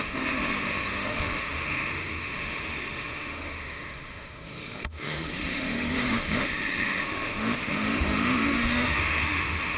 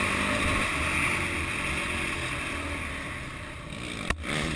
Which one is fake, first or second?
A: first